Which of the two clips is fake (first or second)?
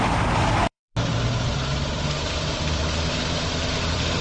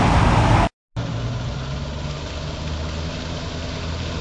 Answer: first